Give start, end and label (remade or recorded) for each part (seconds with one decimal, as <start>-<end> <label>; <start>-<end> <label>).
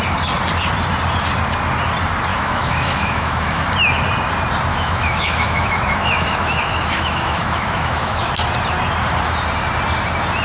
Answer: 0.0-2.3 recorded; 2.3-3.7 remade; 3.7-4.7 recorded; 4.7-8.3 remade; 8.3-10.4 recorded